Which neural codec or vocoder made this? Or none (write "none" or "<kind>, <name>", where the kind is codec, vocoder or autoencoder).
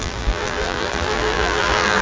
vocoder, BigVGAN v2